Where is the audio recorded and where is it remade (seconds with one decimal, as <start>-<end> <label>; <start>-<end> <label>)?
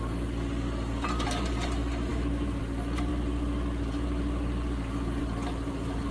0.0-2.1 recorded; 2.1-2.6 remade; 2.6-6.1 recorded